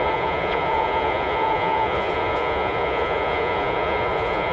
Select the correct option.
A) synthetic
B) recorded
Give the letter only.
A